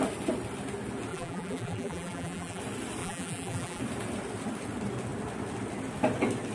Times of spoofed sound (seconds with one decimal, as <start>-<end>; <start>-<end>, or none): 1.1-2.6; 3.0-3.8